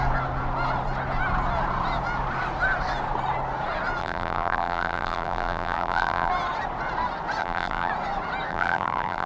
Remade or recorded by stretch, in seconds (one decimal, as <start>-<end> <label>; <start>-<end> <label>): 0.0-4.0 recorded; 4.0-6.3 remade; 6.3-7.4 recorded; 7.4-7.9 remade; 7.9-8.5 recorded; 8.5-9.3 remade